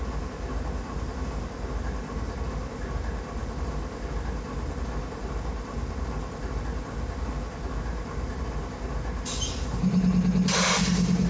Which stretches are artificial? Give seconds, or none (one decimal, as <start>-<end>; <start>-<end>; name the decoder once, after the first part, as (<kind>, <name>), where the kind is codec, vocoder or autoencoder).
none